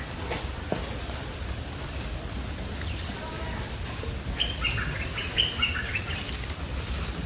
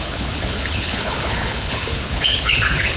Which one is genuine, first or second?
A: first